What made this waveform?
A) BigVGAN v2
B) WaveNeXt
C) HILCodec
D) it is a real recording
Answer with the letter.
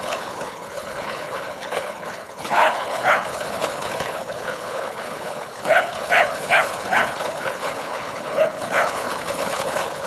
C